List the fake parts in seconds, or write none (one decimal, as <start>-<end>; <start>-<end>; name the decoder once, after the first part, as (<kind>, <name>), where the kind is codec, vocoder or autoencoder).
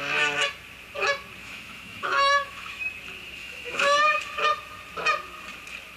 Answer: 1.4-2.9 (autoencoder, DAC-VAE); 3.4-4.2